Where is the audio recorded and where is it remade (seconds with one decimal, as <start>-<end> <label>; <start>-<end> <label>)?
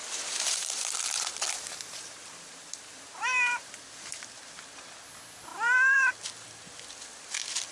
0.0-3.7 remade; 3.7-5.5 recorded; 5.5-6.1 remade; 6.1-7.7 recorded